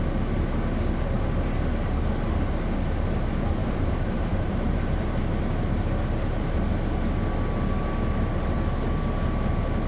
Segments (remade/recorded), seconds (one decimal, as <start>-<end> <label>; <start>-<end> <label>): 0.0-3.6 recorded; 3.6-5.2 remade; 5.2-9.9 recorded